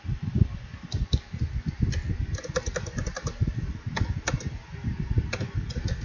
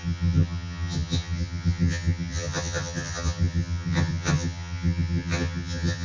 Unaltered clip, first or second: first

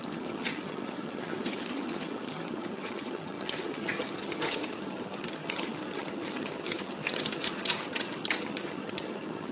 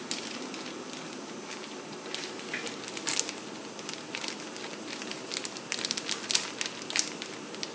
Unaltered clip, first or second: second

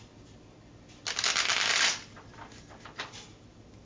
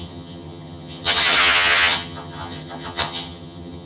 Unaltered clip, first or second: first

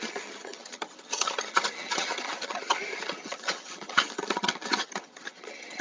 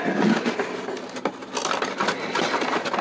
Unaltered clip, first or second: second